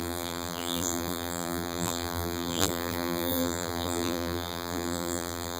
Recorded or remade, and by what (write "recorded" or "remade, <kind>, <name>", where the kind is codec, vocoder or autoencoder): remade, vocoder, BigVGAN v2